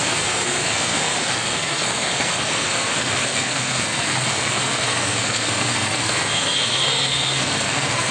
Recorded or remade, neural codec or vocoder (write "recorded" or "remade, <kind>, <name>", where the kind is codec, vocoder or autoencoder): remade, codec, SNAC